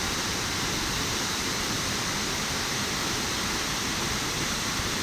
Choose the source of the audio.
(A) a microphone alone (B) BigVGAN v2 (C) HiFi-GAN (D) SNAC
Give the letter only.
B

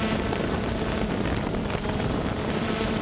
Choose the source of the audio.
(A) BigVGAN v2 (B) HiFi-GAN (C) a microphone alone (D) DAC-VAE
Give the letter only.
A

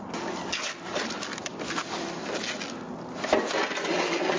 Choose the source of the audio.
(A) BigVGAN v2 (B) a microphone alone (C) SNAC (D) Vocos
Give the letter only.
B